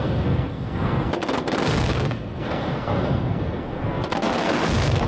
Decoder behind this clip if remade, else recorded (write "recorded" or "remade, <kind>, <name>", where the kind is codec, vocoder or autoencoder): remade, codec, SNAC